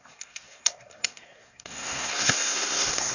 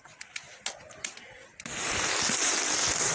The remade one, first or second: first